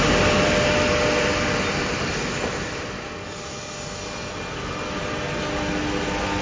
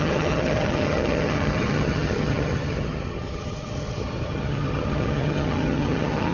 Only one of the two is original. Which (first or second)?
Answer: first